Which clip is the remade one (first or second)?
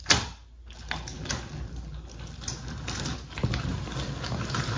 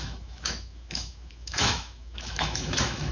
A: second